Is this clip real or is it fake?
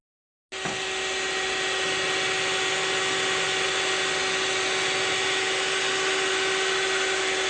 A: real